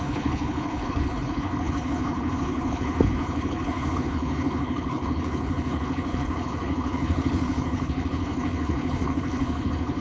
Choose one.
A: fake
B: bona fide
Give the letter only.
A